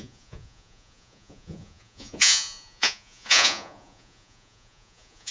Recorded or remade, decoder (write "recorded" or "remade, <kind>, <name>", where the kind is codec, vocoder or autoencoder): remade, vocoder, Vocos